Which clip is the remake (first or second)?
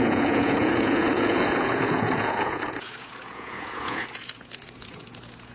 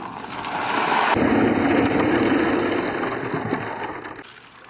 first